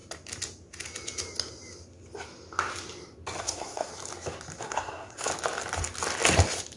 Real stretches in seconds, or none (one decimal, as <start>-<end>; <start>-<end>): 0.0-3.4; 3.9-4.6; 5.3-6.8